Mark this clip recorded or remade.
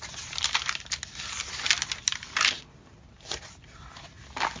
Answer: recorded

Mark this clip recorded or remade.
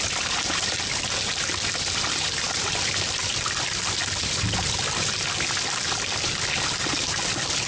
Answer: recorded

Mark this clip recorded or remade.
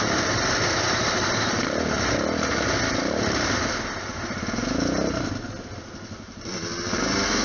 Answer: recorded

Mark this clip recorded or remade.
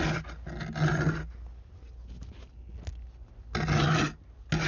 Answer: recorded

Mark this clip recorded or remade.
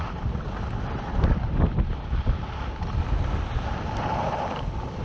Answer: recorded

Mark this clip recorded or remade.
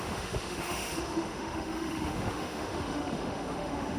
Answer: remade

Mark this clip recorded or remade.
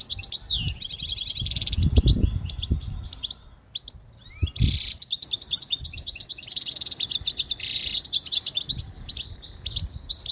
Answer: recorded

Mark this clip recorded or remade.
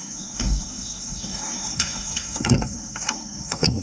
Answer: remade